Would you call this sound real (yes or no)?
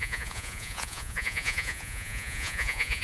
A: no